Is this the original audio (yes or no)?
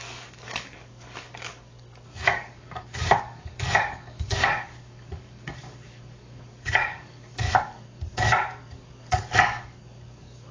no